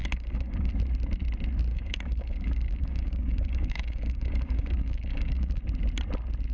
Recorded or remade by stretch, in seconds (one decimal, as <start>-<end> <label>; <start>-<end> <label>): 0.0-0.7 remade; 0.7-1.7 recorded; 1.7-5.6 remade; 5.6-6.5 recorded